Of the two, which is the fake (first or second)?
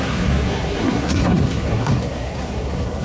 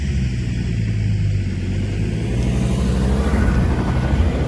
first